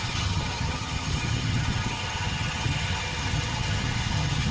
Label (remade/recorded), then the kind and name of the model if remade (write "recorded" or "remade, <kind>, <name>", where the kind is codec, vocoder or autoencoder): remade, vocoder, HiFi-GAN